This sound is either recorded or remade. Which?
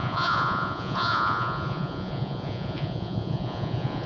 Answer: remade